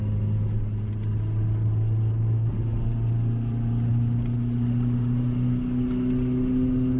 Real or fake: real